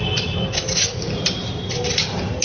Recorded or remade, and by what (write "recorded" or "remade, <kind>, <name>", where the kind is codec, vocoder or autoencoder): recorded